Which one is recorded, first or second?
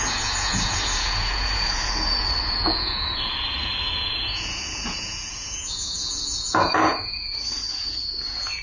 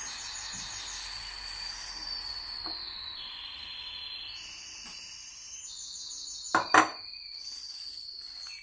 second